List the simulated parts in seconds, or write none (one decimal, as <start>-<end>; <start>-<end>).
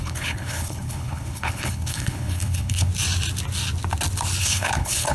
0.0-2.9; 4.4-5.1